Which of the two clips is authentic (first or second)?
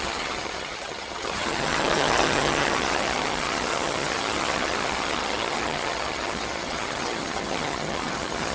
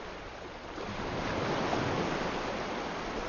second